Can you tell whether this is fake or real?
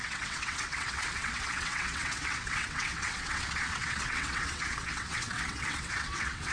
fake